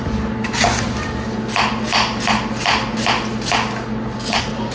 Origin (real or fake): real